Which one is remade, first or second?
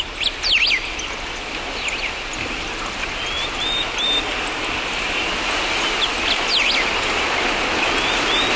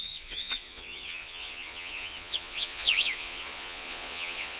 second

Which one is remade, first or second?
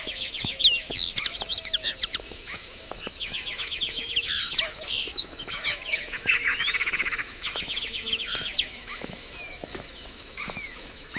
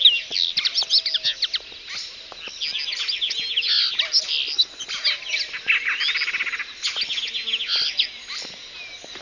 first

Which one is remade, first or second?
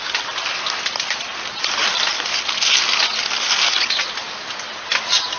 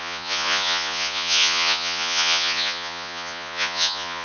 second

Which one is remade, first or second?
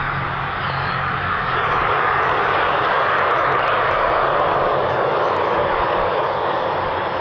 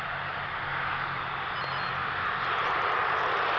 first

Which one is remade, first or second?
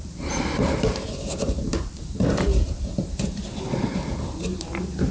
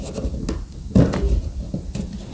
first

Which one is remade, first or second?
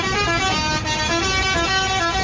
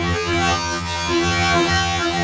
second